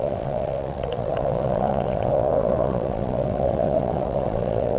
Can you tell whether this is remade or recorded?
remade